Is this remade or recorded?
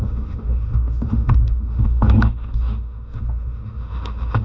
remade